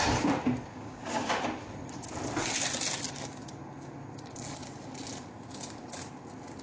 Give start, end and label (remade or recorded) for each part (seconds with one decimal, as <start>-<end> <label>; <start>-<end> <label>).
0.0-0.7 recorded; 0.7-1.3 remade; 1.3-6.6 recorded